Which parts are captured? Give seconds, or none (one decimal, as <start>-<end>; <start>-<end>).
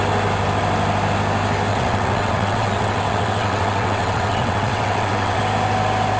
0.0-1.7; 5.4-6.2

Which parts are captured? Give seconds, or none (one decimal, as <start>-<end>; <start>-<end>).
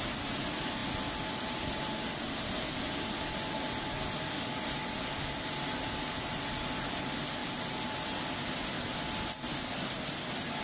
0.0-10.6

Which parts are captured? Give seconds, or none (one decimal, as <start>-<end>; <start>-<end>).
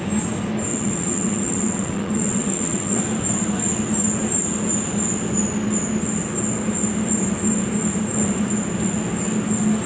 0.0-0.7; 3.0-9.9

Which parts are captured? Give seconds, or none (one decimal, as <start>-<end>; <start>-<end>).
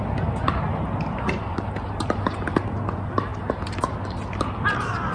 0.0-5.1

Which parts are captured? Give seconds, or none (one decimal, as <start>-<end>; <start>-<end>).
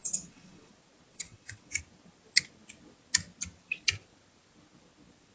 0.7-1.1; 1.7-5.3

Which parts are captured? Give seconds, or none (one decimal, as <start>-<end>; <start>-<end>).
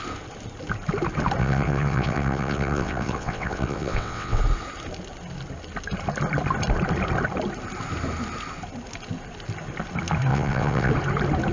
0.0-1.4; 4.4-10.3; 10.9-11.5